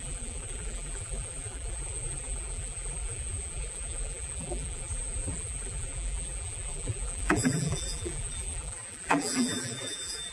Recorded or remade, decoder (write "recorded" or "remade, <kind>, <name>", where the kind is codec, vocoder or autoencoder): remade, vocoder, BigVGAN v2